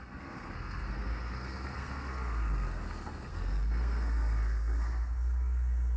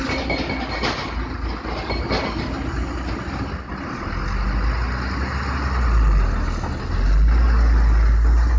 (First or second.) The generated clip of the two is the first